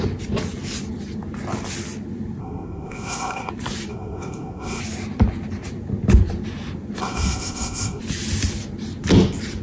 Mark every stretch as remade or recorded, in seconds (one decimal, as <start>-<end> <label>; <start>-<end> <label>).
0.0-2.4 recorded; 2.4-3.5 remade; 3.5-3.9 recorded; 3.9-4.8 remade; 4.8-7.0 recorded; 7.0-8.0 remade; 8.0-9.6 recorded